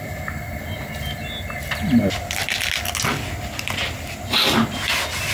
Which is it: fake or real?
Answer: real